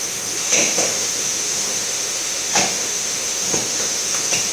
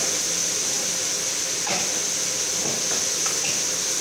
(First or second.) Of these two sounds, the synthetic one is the first